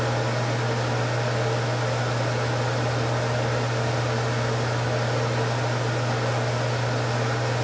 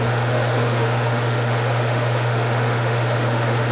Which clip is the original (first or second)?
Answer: first